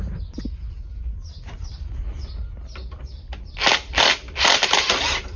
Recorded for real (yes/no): yes